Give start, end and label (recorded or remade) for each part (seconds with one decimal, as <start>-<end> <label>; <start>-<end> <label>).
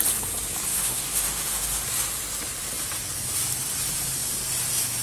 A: 0.0-0.7 recorded; 0.7-1.8 remade; 1.8-5.0 recorded